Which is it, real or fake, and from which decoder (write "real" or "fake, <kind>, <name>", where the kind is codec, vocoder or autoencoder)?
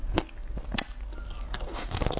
real